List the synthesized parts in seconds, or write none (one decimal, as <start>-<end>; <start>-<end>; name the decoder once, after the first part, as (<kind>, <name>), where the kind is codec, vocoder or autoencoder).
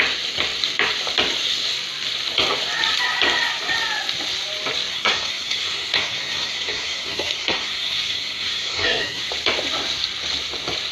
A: 4.9-9.3 (codec, SNAC)